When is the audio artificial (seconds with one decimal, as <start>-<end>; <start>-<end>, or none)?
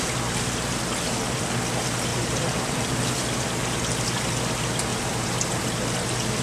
2.1-3.0; 4.9-5.4